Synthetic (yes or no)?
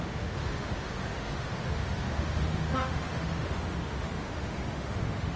yes